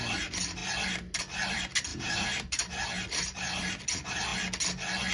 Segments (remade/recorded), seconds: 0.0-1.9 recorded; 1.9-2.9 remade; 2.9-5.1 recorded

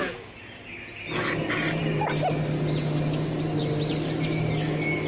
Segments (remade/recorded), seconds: 0.0-0.8 remade; 0.8-5.1 recorded

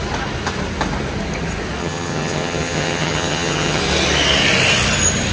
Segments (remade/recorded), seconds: 0.0-1.8 recorded; 1.8-3.8 remade; 3.8-5.3 recorded

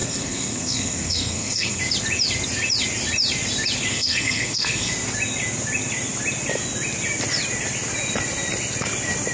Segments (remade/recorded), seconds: 0.0-1.8 remade; 1.8-3.9 recorded; 3.9-4.9 remade; 4.9-9.3 recorded

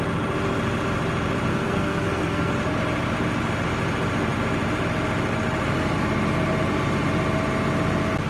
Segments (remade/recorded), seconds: 0.0-1.5 recorded; 1.5-2.5 remade; 2.5-8.3 recorded

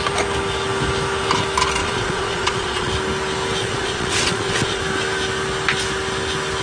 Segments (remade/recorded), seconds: 0.0-1.8 recorded; 1.8-2.9 remade; 2.9-3.6 recorded; 3.6-4.8 remade; 4.8-6.6 recorded